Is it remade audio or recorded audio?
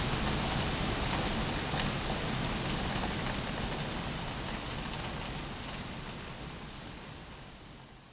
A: recorded